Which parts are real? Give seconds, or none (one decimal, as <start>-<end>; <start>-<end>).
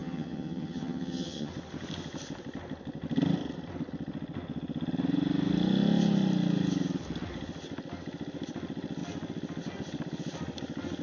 1.5-11.0